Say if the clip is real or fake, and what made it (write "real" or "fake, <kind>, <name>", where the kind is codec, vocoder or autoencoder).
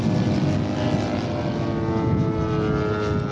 real